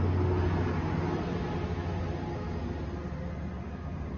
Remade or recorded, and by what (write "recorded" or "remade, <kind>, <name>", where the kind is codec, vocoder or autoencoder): recorded